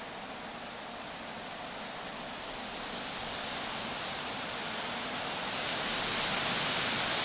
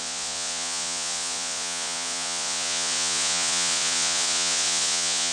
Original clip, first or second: first